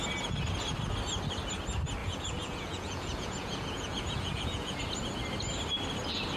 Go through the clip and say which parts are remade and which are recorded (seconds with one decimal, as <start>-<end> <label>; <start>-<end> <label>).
0.0-2.0 recorded; 2.0-4.8 remade; 4.8-6.4 recorded